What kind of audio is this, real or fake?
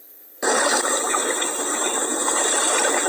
fake